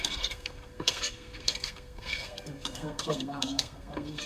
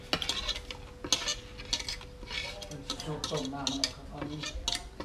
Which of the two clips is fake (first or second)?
first